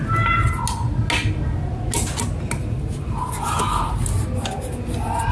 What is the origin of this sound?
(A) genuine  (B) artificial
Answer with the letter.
A